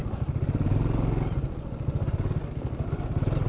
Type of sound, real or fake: real